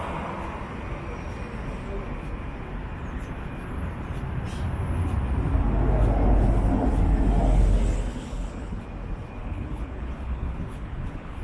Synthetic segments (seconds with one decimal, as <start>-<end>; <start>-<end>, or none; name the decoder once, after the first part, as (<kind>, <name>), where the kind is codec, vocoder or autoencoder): 8.1-8.8 (codec, HILCodec); 9.4-11.4